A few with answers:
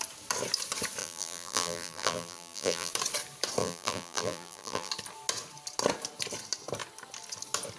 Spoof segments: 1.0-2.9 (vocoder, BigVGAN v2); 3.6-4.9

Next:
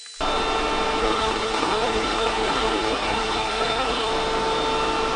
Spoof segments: 1.0-4.1 (codec, SNAC)

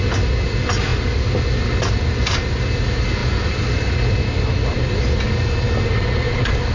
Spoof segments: none

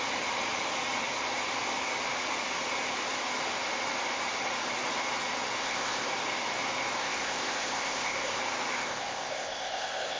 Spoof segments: 5.6-6.1 (codec, ZipCodec); 7.0-8.4; 8.8-10.2